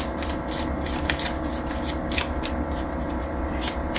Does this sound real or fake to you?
real